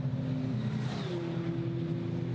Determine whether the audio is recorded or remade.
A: recorded